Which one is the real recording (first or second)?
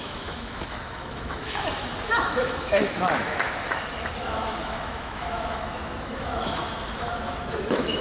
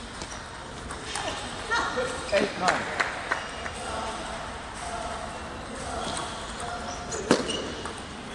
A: second